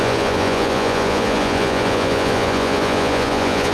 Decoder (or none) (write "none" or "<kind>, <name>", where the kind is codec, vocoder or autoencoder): vocoder, Vocos